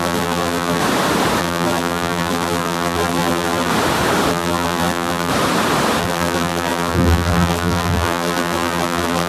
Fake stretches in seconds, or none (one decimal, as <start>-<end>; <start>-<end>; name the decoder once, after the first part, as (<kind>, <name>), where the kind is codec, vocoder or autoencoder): 0.0-0.8 (vocoder, BigVGAN v2); 1.4-3.7; 4.3-5.3; 6.0-9.3